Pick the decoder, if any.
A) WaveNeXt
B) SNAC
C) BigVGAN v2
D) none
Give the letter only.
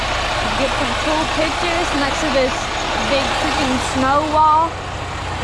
D